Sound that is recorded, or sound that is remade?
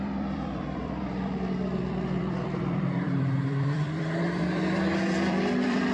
remade